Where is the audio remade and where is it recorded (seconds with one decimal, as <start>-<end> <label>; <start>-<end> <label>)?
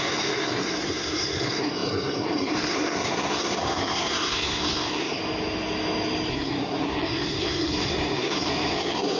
0.0-5.2 remade; 5.2-6.3 recorded; 6.3-9.2 remade